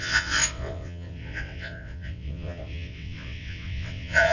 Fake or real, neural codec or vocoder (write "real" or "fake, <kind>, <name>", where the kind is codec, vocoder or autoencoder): fake, vocoder, WaveNeXt